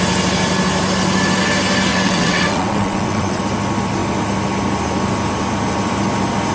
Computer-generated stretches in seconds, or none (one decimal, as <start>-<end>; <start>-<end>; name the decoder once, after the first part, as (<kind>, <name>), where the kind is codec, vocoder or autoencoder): 1.9-3.4 (vocoder, WaveNeXt)